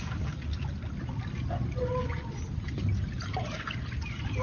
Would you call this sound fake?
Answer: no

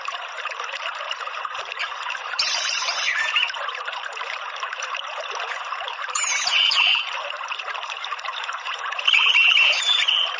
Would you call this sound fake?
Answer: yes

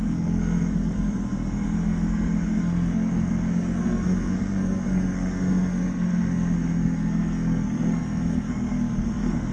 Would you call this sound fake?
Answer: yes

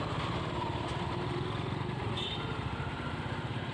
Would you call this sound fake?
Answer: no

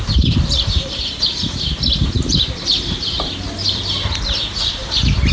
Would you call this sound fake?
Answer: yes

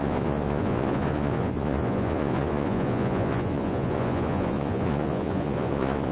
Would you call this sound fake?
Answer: yes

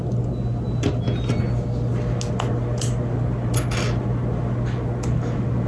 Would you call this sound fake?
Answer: no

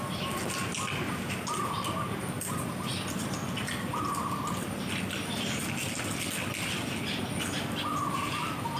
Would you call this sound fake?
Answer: no